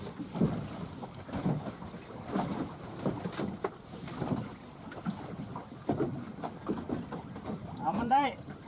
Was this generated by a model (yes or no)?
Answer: yes